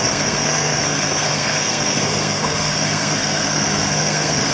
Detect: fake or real fake